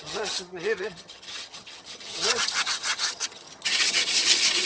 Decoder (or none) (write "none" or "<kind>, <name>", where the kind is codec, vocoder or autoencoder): vocoder, HiFi-GAN